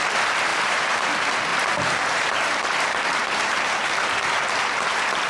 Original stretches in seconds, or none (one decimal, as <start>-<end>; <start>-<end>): 0.0-0.5; 1.1-1.5; 4.4-5.3